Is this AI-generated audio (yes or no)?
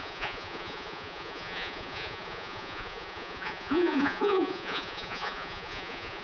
yes